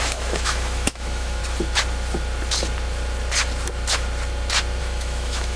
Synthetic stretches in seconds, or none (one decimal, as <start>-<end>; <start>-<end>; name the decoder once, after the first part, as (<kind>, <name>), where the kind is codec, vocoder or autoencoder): 0.0-1.4 (autoencoder, DAC-VAE); 4.8-5.6